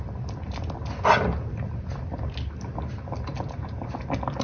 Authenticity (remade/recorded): recorded